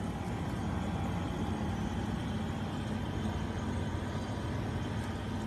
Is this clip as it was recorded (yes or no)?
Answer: yes